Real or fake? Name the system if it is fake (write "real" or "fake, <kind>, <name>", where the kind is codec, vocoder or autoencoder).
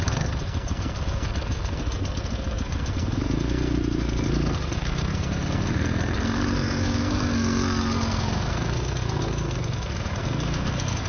fake, codec, SNAC